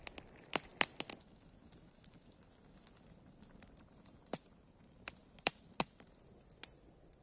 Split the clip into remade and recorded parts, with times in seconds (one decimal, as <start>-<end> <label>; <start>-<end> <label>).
0.0-5.2 recorded; 5.2-5.8 remade; 5.8-7.2 recorded